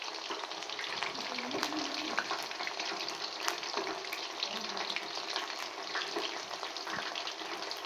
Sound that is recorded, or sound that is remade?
recorded